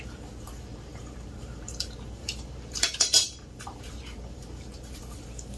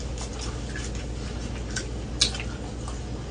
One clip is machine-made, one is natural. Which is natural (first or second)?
second